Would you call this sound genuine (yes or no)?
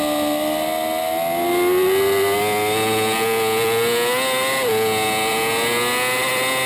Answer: yes